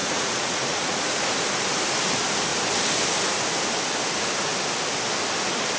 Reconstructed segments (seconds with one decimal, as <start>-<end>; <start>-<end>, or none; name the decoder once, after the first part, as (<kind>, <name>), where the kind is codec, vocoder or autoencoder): 0.0-1.2 (vocoder, Vocos)